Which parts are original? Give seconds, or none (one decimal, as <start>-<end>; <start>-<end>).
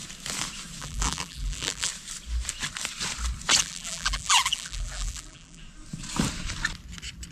0.0-0.8; 1.9-3.6; 5.6-7.3